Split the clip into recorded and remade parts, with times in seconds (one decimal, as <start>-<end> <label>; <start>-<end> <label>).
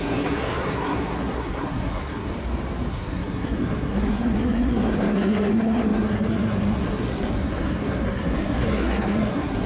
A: 0.0-2.3 remade; 2.3-2.9 recorded; 2.9-9.7 remade